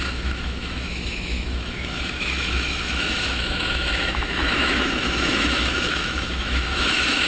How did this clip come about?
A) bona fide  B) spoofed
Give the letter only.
B